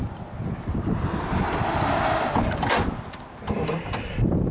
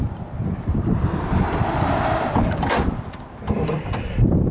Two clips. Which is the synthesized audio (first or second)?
second